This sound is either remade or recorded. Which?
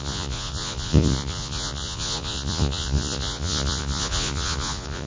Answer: remade